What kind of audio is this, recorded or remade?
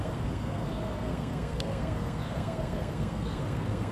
remade